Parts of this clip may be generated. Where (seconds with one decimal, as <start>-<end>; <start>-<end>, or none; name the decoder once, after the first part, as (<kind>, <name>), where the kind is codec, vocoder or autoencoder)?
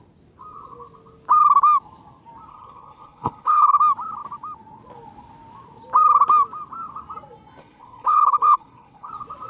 2.5-3.8 (codec, HILCodec); 7.6-9.1